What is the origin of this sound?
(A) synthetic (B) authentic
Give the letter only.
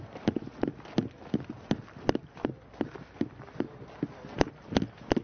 B